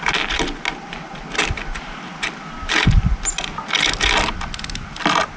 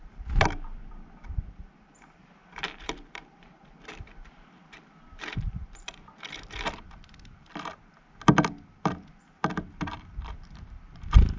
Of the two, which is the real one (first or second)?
first